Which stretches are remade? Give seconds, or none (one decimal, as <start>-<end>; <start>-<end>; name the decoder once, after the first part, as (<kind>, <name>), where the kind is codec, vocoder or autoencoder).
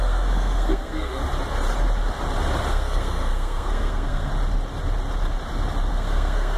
0.0-1.2 (codec, SNAC); 2.7-4.3; 5.9-6.6